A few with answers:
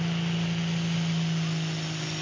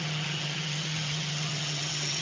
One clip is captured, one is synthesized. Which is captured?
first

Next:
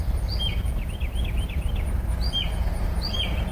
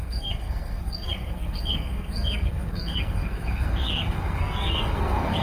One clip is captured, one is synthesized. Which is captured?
first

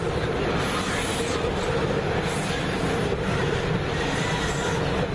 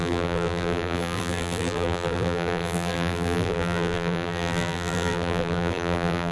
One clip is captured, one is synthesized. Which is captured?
first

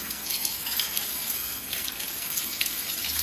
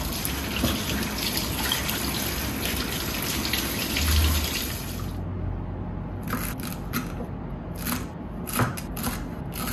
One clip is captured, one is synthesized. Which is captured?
second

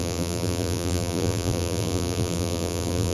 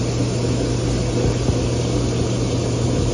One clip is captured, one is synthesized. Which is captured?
second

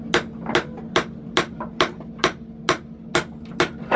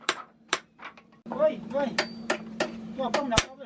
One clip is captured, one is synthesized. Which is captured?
first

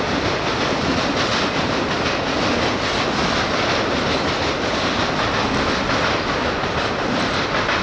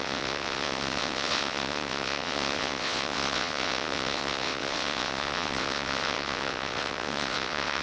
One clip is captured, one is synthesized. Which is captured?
first